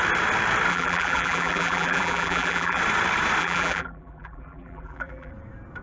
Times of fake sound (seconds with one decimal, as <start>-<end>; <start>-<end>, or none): 0.7-2.8; 3.4-5.3